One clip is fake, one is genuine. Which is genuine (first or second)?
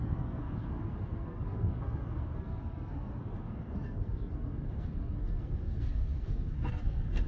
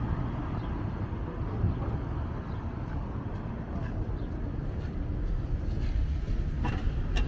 second